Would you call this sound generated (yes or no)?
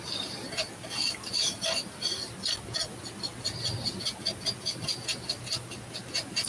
no